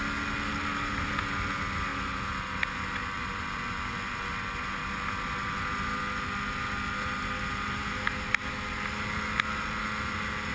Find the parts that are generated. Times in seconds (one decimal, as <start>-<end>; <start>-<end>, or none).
none